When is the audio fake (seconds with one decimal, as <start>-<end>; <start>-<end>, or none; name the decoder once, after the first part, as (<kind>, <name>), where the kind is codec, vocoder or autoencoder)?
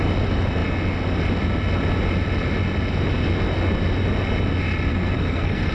4.9-5.7 (codec, SNAC)